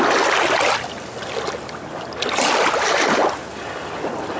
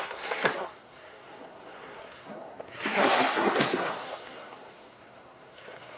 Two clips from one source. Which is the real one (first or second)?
first